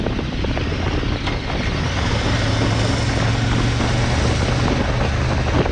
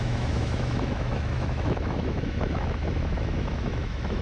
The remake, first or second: second